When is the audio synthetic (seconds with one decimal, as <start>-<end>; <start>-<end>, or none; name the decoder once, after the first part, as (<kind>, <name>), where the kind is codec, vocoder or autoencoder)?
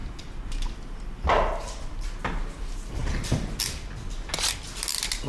none